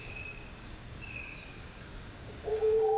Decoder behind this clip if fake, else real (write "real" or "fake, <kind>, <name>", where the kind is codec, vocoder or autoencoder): fake, codec, DAC